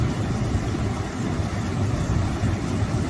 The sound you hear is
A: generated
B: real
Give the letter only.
B